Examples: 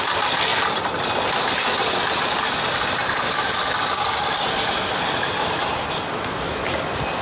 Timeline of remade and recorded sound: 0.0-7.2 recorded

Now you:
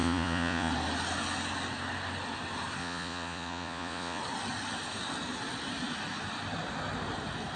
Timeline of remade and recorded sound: 0.0-0.7 remade; 0.7-2.8 recorded; 2.8-4.2 remade; 4.2-7.6 recorded

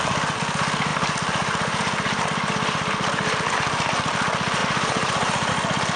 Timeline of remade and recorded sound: 0.0-4.6 recorded; 4.6-5.5 remade; 5.5-6.0 recorded